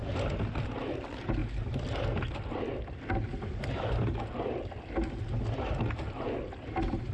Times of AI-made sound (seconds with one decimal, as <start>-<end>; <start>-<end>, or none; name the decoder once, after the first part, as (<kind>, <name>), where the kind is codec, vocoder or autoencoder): none